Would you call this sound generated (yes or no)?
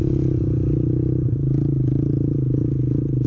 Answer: no